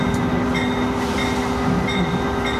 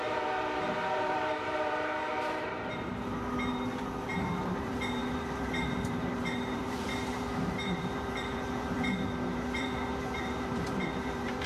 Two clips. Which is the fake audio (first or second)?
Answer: second